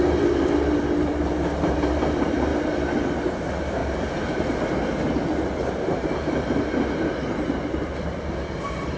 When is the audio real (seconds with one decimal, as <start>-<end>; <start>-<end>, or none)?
2.5-3.3